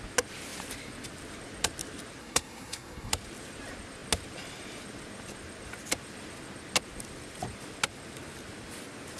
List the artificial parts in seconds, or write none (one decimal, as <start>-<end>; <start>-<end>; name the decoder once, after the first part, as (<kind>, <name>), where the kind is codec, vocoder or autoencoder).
2.2-3.1 (codec, SNAC)